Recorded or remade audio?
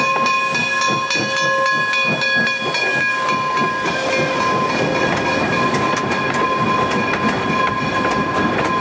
recorded